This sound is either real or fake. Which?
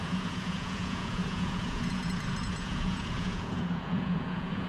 fake